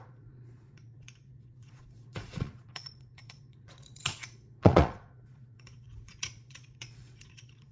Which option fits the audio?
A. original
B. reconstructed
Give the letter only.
B